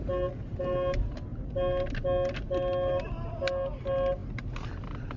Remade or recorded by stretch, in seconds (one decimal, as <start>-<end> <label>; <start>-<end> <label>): 0.0-5.2 recorded

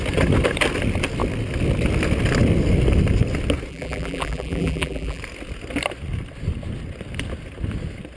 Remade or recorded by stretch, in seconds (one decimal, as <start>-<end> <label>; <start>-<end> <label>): 0.0-3.7 recorded; 3.7-5.2 remade; 5.2-8.2 recorded

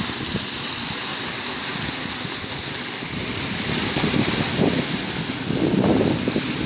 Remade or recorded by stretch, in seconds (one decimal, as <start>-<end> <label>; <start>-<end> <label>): 0.0-6.7 recorded

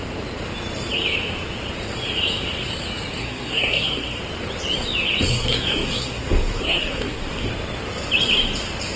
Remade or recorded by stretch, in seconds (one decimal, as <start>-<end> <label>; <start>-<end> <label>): 0.0-3.2 recorded; 3.2-4.2 remade; 4.2-5.3 recorded; 5.3-7.5 remade; 7.5-9.0 recorded

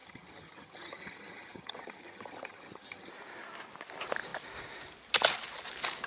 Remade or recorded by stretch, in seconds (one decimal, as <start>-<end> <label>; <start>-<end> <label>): 0.0-3.1 remade; 3.1-6.1 recorded

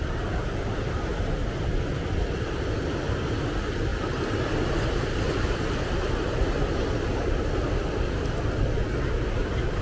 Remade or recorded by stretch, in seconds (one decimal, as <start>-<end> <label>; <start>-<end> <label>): 0.0-9.8 recorded

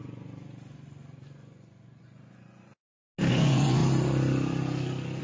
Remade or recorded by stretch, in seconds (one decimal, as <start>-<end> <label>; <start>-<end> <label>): 0.0-2.7 remade; 2.7-3.3 recorded; 3.3-3.8 remade; 3.8-5.2 recorded